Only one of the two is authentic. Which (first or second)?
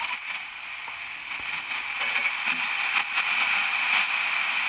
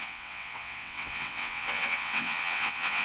first